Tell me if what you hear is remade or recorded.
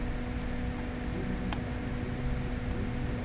recorded